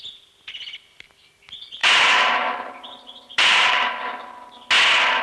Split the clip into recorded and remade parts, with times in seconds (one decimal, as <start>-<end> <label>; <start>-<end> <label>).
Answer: 0.0-1.8 recorded; 1.8-4.5 remade; 4.5-5.2 recorded